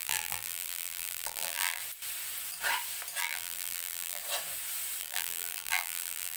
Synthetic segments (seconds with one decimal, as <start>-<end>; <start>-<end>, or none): 0.0-1.8; 3.2-4.2; 5.0-6.4